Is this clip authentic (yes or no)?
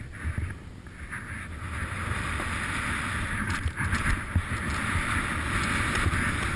yes